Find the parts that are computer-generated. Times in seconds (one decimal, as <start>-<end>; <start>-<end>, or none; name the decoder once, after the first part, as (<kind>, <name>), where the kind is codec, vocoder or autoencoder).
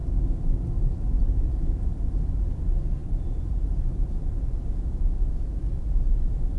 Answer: 1.2-6.6 (vocoder, BigVGAN v2)